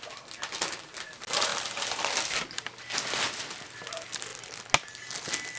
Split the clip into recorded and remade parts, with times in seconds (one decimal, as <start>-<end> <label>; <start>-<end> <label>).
0.0-5.6 recorded